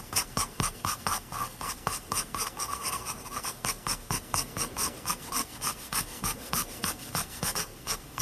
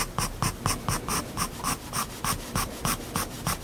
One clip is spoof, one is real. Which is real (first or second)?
second